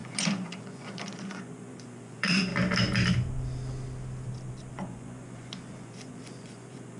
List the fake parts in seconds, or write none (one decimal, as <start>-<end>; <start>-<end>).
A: 0.0-2.5; 4.7-7.0